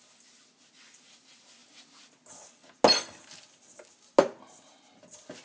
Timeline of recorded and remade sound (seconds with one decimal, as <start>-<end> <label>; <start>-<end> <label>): 0.0-5.4 recorded